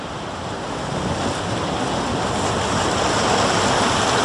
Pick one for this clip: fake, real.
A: real